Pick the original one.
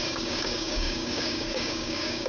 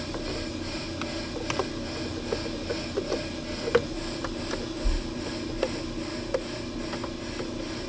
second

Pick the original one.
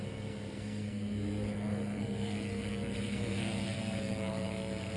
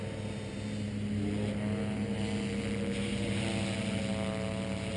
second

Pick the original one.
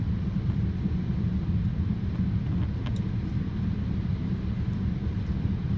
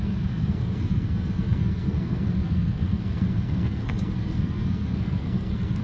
first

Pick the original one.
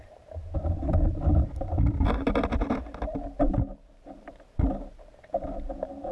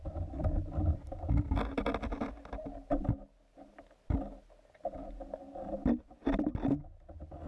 second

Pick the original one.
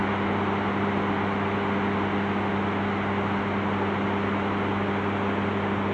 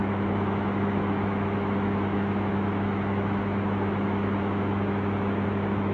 first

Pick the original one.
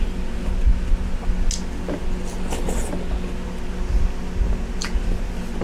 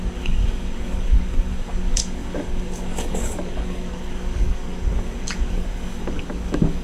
first